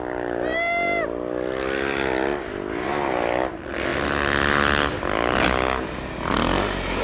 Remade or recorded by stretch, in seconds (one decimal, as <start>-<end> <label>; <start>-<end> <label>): 0.0-7.0 recorded